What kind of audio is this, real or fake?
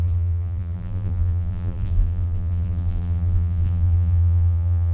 fake